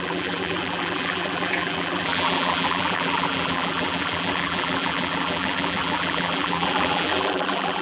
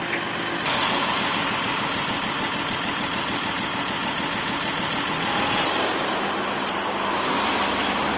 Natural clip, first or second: second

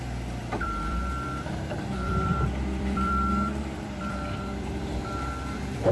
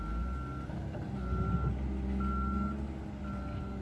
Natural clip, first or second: second